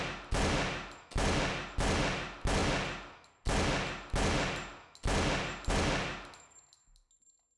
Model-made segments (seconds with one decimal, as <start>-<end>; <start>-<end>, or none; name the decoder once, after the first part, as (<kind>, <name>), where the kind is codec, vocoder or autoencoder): none